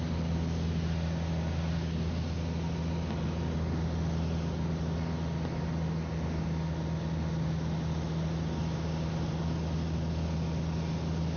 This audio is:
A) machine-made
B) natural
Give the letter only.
B